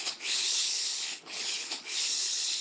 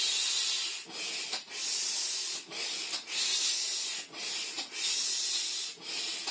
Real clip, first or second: second